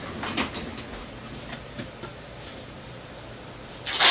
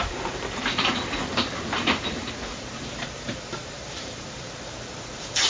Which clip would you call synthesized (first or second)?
second